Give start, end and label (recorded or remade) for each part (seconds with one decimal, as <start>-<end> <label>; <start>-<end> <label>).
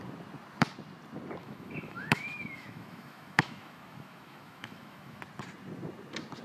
0.0-1.4 recorded; 1.4-5.2 remade; 5.2-6.4 recorded